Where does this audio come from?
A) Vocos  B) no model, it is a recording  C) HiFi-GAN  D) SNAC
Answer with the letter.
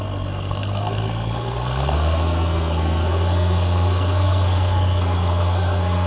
D